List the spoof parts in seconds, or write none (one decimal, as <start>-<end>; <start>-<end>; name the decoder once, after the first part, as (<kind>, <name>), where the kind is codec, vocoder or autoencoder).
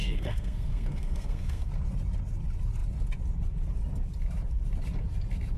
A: 0.0-1.7 (codec, SNAC)